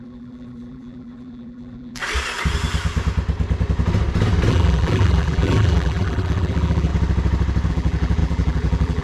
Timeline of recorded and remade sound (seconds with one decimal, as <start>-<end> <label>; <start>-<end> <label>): 0.0-2.0 remade; 2.0-4.5 recorded; 4.5-6.9 remade; 6.9-7.7 recorded; 7.7-9.0 remade